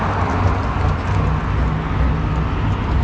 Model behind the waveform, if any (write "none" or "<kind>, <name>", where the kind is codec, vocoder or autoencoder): none